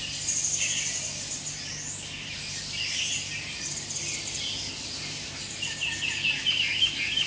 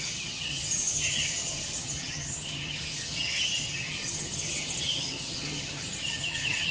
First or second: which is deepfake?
second